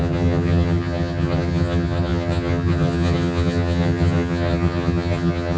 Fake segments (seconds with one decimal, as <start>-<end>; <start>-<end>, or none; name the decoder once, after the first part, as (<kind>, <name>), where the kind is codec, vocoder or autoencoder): 0.0-5.6 (vocoder, HiFi-GAN)